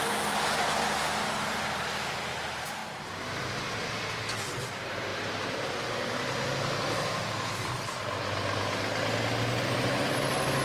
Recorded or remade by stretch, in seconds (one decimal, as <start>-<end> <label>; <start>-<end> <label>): 0.0-10.6 recorded